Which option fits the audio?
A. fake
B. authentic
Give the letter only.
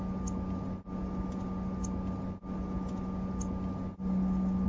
B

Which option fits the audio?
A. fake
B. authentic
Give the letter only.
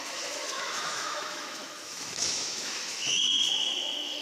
A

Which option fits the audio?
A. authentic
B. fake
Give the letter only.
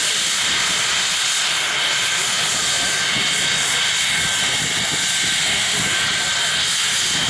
A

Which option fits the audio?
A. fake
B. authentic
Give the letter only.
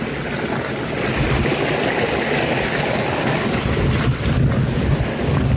B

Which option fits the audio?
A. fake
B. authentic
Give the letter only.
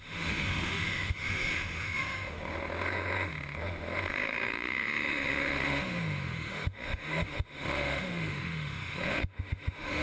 A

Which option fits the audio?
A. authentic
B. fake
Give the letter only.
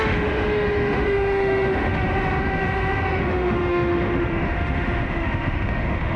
B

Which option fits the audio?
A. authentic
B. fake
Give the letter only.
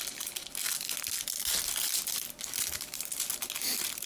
A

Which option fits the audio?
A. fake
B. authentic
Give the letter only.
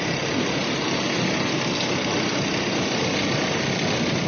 B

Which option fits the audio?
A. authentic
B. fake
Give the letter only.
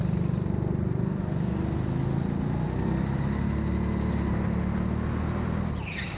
A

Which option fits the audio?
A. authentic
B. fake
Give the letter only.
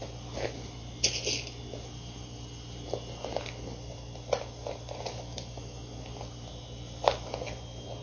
A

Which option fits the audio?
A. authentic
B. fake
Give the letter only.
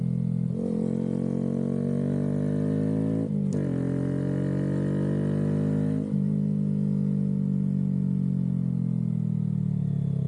A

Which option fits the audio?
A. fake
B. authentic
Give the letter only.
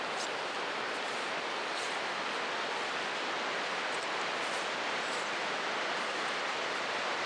B